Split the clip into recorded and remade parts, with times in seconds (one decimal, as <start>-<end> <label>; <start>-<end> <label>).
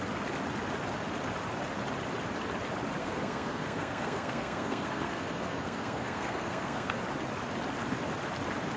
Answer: 0.0-3.0 recorded; 3.0-7.0 remade; 7.0-8.8 recorded